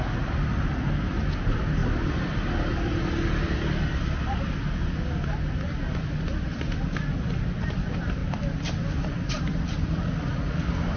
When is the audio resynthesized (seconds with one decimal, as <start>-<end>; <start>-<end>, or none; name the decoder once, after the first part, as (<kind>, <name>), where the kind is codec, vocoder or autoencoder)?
8.2-11.0 (vocoder, BigVGAN v2)